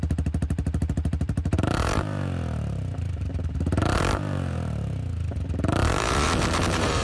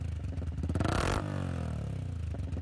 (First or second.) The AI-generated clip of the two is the first